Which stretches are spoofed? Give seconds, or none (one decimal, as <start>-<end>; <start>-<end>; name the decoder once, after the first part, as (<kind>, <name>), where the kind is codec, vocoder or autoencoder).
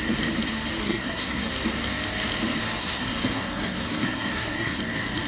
0.8-1.5 (codec, SNAC); 2.8-4.8